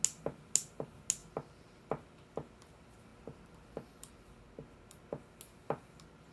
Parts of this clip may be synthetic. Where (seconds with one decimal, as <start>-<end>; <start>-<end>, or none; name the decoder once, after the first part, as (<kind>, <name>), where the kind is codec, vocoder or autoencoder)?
1.2-1.9 (vocoder, BigVGAN v2); 3.1-4.1